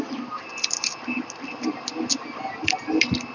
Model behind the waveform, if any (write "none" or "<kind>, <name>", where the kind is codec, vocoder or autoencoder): none